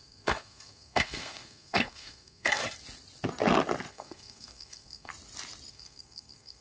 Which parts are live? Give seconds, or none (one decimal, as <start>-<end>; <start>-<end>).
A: 2.6-3.9; 5.1-5.7